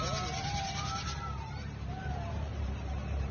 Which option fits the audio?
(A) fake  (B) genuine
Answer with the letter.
A